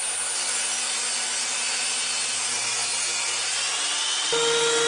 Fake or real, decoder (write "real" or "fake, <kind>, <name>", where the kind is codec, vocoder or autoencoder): real